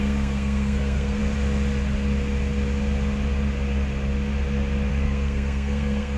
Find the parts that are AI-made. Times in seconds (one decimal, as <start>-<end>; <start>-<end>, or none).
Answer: 0.0-1.2; 4.9-6.2